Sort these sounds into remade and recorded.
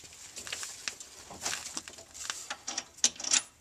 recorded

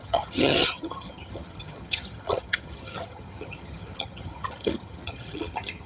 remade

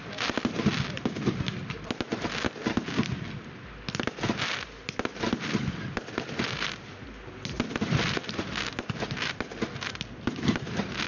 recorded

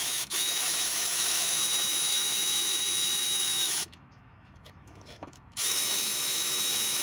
remade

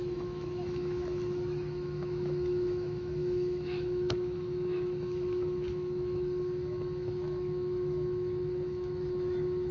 remade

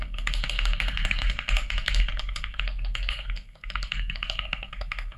remade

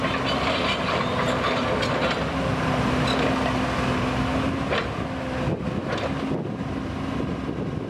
recorded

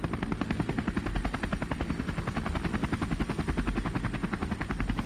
recorded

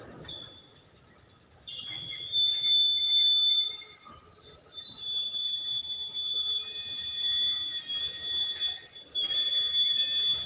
remade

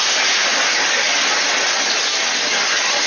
recorded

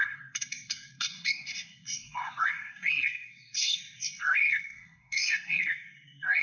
remade